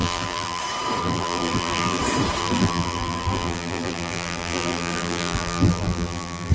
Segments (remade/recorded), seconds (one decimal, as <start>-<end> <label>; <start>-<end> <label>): 0.0-0.6 remade; 0.6-1.0 recorded; 1.0-2.0 remade; 2.0-2.4 recorded; 2.4-6.5 remade

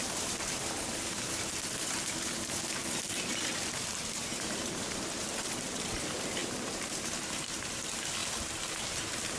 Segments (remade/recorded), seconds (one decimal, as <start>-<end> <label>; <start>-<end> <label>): 0.0-9.4 remade

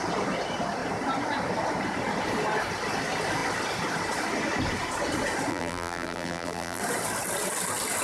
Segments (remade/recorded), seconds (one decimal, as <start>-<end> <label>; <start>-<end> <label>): 0.0-5.5 recorded; 5.5-6.8 remade; 6.8-8.0 recorded

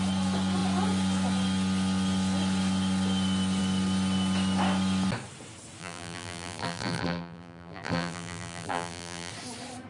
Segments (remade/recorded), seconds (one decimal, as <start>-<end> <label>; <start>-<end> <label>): 0.0-5.8 recorded; 5.8-9.3 remade; 9.3-9.9 recorded

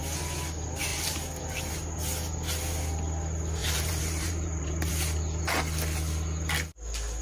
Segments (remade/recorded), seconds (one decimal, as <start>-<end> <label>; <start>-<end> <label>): 0.0-0.9 recorded; 0.9-1.7 remade; 1.7-3.6 recorded; 3.6-4.9 remade; 4.9-7.2 recorded

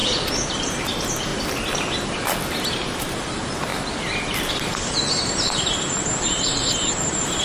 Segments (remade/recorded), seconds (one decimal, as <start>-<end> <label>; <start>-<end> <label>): 0.0-0.6 recorded; 0.6-1.3 remade; 1.3-2.5 recorded; 2.5-3.7 remade; 3.7-4.5 recorded; 4.5-7.4 remade